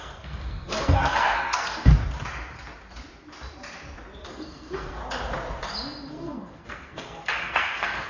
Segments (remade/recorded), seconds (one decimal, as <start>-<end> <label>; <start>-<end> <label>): 0.0-1.9 remade; 1.9-4.3 recorded; 4.3-5.0 remade; 5.0-6.1 recorded; 6.1-8.1 remade